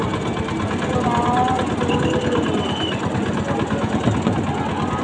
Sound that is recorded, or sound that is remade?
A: recorded